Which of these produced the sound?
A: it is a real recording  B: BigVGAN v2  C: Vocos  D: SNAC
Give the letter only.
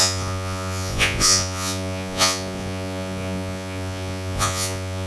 C